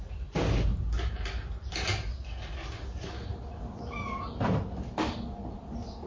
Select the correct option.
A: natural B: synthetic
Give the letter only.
A